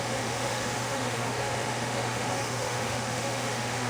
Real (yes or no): no